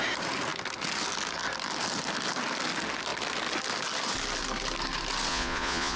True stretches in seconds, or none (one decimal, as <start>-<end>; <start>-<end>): 0.0-5.3